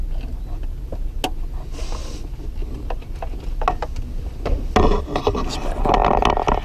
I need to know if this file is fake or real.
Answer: real